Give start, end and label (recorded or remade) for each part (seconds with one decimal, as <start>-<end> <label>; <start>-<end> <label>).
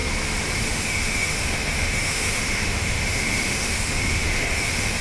0.0-0.6 recorded; 0.6-5.0 remade